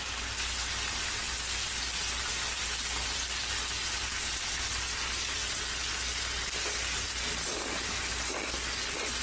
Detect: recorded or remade recorded